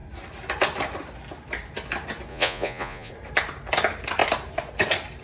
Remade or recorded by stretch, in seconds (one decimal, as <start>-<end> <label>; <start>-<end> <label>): 0.0-2.3 recorded; 2.3-3.1 remade; 3.1-5.2 recorded